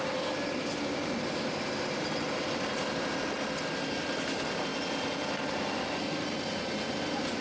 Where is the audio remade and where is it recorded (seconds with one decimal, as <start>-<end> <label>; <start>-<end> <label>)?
0.0-7.4 recorded